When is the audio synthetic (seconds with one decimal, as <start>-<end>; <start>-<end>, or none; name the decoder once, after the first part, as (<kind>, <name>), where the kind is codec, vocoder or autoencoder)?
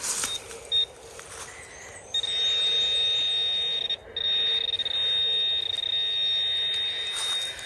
none